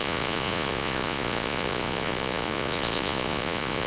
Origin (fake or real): fake